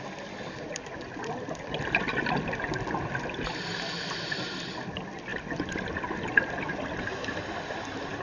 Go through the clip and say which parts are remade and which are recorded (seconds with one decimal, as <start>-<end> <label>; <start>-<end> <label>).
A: 0.0-8.2 recorded